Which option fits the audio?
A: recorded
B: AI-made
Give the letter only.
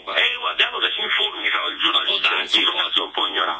B